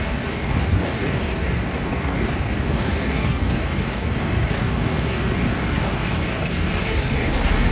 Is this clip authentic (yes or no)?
no